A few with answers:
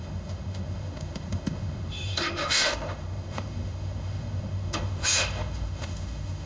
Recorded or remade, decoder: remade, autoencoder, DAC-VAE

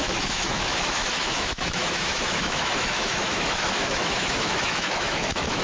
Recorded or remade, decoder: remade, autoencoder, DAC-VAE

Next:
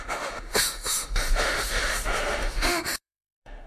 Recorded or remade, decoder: remade, autoencoder, DAC-VAE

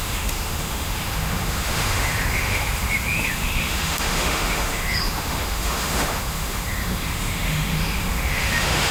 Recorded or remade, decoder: remade, autoencoder, DAC-VAE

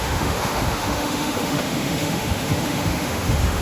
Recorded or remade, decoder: remade, autoencoder, DAC-VAE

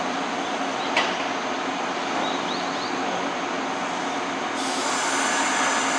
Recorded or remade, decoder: recorded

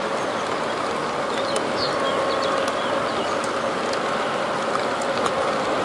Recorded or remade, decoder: recorded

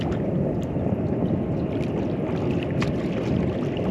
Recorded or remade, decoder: recorded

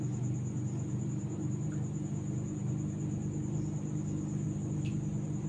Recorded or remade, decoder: recorded